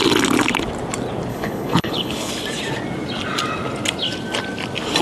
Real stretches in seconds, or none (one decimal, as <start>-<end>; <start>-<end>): 0.0-1.3; 2.3-5.0